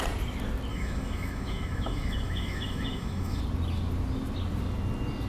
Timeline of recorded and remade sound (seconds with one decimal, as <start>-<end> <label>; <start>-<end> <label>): 0.0-0.7 recorded; 0.7-3.4 remade; 3.4-5.3 recorded